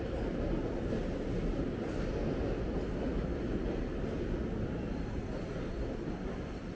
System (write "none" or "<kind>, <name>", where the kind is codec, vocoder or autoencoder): none